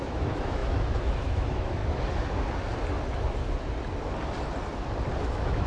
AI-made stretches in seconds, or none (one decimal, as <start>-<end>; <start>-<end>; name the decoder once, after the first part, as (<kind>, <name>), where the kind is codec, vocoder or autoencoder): 0.0-1.8 (autoencoder, DAC-VAE); 5.2-5.7